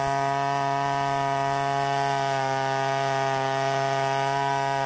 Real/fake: real